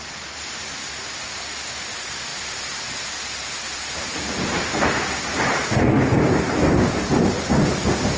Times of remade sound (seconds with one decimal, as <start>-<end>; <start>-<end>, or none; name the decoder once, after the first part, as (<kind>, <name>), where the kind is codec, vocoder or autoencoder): none